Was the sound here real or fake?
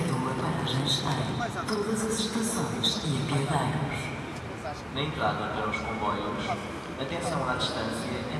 real